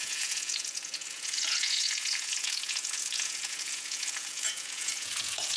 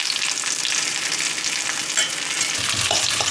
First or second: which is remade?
first